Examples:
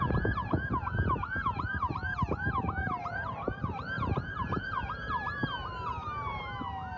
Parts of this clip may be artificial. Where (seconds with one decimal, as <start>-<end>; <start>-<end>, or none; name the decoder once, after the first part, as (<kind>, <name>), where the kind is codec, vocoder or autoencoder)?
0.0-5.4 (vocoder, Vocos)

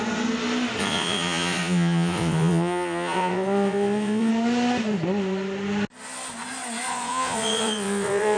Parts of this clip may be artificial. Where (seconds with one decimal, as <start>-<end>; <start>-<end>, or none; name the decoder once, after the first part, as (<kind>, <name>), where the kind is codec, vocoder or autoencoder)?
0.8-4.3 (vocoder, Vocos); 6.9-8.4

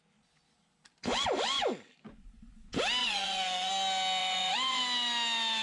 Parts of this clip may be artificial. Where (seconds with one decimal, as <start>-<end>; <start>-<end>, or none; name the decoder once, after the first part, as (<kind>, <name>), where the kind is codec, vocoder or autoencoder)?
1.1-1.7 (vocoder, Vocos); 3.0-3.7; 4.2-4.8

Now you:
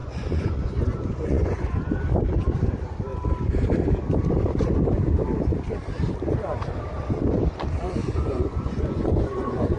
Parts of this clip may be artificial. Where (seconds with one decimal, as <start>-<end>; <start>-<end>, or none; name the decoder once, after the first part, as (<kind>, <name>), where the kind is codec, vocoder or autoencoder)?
0.0-2.0 (vocoder, Vocos); 8.0-9.8